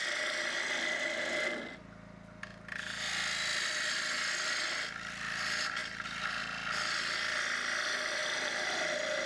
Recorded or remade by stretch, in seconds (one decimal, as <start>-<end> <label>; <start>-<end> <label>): 0.0-5.8 recorded; 5.8-6.4 remade; 6.4-8.2 recorded; 8.2-9.3 remade

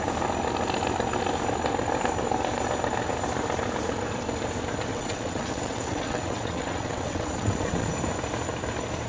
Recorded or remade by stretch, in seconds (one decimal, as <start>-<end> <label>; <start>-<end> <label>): 0.0-4.9 recorded; 4.9-7.9 remade; 7.9-9.1 recorded